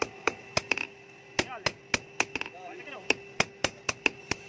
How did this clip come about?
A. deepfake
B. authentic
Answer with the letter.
B